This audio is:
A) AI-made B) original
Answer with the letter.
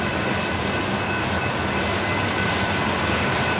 B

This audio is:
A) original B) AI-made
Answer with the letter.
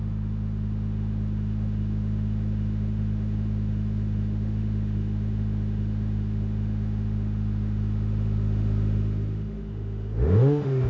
B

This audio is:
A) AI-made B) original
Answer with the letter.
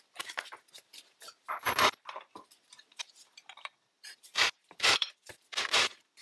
A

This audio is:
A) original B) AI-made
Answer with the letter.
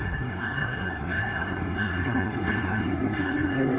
B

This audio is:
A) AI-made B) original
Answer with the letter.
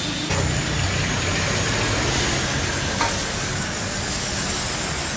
B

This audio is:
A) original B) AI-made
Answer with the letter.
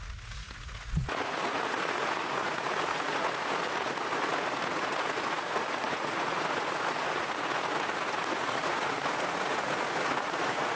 B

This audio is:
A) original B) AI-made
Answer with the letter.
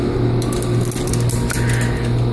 A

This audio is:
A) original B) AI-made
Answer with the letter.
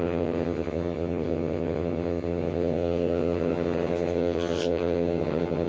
B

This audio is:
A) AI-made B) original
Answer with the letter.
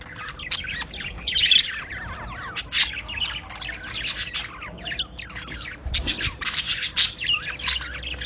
B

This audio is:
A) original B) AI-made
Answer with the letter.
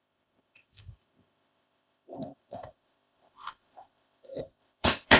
B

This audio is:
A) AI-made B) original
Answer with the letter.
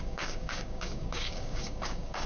A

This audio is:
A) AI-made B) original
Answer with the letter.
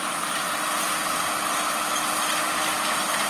B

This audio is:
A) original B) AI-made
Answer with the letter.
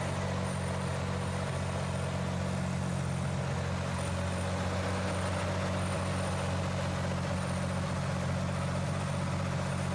A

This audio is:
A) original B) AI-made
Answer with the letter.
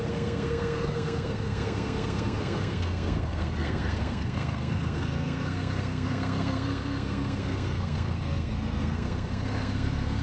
B